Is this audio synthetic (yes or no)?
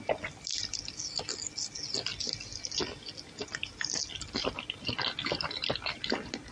no